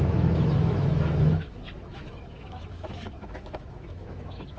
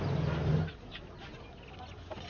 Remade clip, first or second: first